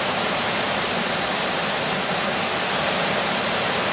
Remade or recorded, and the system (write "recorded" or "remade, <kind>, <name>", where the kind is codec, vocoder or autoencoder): recorded